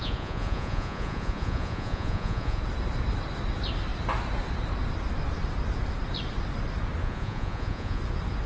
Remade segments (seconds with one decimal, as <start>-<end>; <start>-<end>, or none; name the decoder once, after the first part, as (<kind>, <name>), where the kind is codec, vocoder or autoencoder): 0.0-2.6 (vocoder, Vocos); 7.0-8.0